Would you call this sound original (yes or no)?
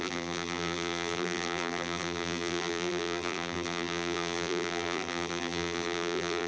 no